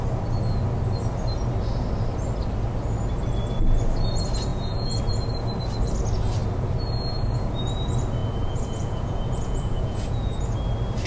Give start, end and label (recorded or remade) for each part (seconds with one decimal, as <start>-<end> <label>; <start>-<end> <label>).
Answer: 0.0-4.5 recorded; 4.5-5.0 remade; 5.0-8.2 recorded; 8.2-10.4 remade; 10.4-11.1 recorded